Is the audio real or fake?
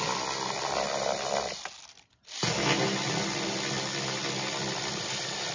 real